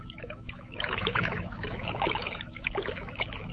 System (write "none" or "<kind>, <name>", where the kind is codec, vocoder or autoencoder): autoencoder, DAC-VAE